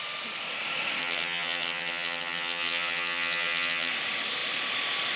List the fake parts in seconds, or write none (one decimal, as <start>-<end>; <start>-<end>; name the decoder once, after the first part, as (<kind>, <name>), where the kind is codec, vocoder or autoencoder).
1.0-3.9 (vocoder, HiFi-GAN)